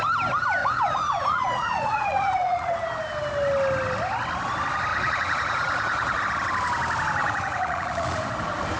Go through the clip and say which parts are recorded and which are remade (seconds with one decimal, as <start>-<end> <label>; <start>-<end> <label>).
0.0-0.6 recorded; 0.6-2.7 remade; 2.7-4.9 recorded; 4.9-6.2 remade; 6.2-7.2 recorded; 7.2-8.3 remade; 8.3-8.8 recorded

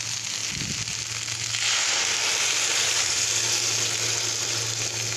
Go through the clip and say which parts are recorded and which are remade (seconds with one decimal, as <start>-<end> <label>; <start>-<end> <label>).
0.0-5.2 recorded

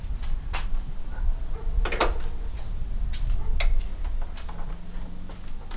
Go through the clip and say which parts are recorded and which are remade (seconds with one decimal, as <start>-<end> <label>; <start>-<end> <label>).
0.0-5.8 recorded

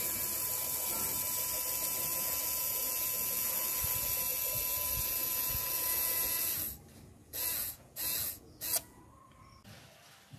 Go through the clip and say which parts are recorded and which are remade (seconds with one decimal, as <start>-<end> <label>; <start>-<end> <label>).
0.0-2.1 recorded; 2.1-3.8 remade; 3.8-4.7 recorded; 4.7-6.5 remade; 6.5-7.2 recorded; 7.2-9.0 remade; 9.0-10.4 recorded

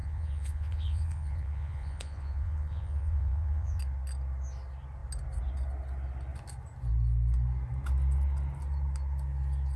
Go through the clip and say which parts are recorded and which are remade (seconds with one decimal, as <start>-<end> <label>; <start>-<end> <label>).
0.0-3.8 remade; 3.8-9.8 recorded

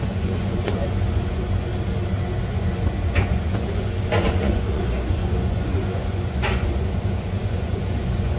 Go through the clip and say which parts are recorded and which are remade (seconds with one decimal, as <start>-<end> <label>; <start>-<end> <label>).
0.0-1.7 remade; 1.7-2.4 recorded; 2.4-8.4 remade

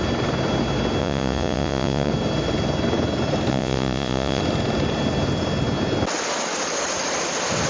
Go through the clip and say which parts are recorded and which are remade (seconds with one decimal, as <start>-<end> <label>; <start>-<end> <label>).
0.0-1.0 recorded; 1.0-2.1 remade; 2.1-3.5 recorded; 3.5-4.4 remade; 4.4-7.7 recorded

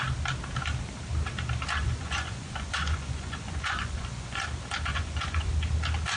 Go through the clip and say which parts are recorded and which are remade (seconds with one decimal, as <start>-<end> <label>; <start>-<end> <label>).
0.0-1.8 recorded; 1.8-4.4 remade; 4.4-4.9 recorded; 4.9-5.5 remade; 5.5-6.2 recorded